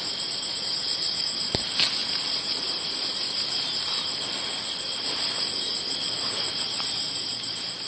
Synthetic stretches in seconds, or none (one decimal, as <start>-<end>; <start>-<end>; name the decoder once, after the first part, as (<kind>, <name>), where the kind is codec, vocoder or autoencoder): 0.0-2.0 (vocoder, BigVGAN v2); 6.1-7.9